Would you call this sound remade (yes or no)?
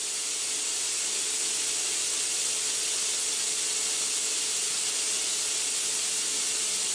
no